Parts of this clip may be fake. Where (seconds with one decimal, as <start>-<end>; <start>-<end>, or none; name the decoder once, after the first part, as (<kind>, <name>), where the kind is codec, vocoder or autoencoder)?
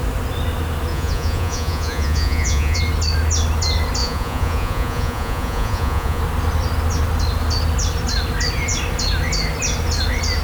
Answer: 0.9-2.8 (vocoder, Vocos); 4.0-6.2